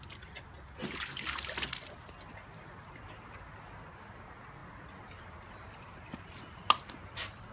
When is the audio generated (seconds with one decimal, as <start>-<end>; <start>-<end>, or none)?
none